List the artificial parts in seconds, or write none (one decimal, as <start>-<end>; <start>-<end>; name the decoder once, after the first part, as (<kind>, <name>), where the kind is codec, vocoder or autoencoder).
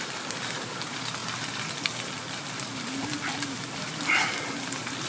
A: none